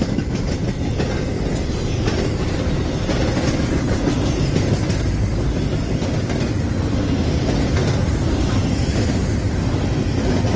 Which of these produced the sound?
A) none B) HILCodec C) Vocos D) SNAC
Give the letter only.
A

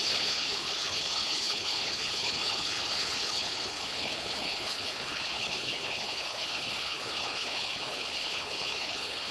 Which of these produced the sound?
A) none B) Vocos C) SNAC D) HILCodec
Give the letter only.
D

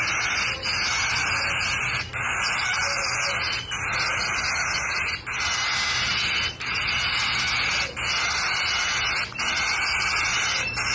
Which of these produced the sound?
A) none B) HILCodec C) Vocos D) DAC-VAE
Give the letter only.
A